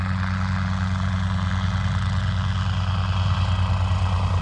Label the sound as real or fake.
real